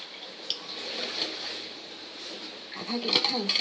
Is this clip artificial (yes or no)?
no